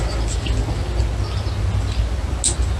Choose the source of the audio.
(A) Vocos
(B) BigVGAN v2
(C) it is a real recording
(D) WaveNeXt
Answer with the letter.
C